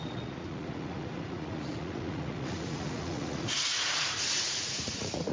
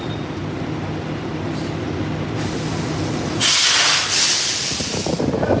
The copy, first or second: first